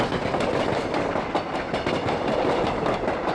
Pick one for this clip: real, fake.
real